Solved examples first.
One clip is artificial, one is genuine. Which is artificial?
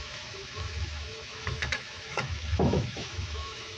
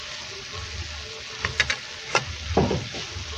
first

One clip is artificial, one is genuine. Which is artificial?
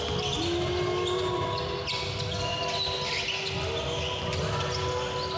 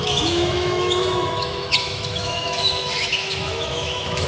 second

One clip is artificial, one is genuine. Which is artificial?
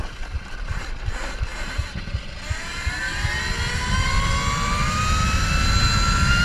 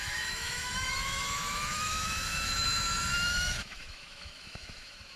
second